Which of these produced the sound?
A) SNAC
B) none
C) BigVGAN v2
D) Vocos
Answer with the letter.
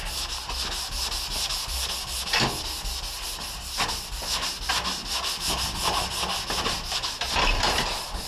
B